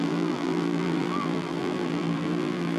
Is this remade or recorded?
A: remade